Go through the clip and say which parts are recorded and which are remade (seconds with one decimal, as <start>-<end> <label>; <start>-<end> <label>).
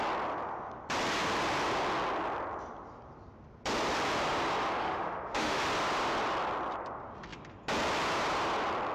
0.0-4.8 recorded; 4.8-5.6 remade; 5.6-8.9 recorded